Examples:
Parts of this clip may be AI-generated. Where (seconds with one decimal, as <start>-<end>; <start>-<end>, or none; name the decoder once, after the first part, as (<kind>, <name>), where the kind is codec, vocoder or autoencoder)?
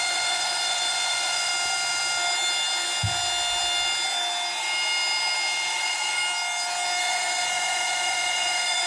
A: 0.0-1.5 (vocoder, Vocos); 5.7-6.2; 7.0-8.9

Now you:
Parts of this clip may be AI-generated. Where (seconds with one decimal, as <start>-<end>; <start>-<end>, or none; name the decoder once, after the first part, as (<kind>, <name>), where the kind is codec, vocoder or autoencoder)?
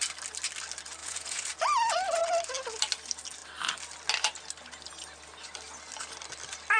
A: 1.0-1.5 (vocoder, Vocos)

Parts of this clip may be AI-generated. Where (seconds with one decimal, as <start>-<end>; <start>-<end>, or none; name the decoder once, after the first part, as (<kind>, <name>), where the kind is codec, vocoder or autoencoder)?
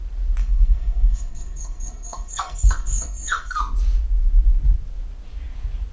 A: 0.4-3.6 (codec, SNAC)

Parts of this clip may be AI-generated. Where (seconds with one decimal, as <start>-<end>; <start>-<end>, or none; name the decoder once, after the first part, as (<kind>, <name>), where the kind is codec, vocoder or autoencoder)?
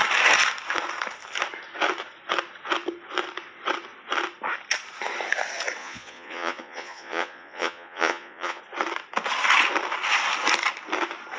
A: 5.8-8.6 (vocoder, Vocos)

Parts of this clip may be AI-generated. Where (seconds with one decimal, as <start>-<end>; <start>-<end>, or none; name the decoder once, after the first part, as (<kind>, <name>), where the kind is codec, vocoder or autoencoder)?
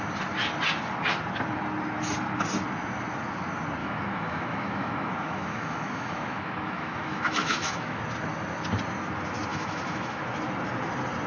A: 3.8-8.0 (autoencoder, DAC-VAE); 9.5-10.2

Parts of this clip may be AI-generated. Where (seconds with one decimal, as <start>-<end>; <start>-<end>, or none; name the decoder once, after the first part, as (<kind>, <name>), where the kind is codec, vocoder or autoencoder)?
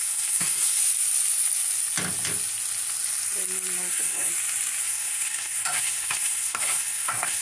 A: 0.0-0.8 (codec, SNAC); 3.8-4.3; 4.8-7.4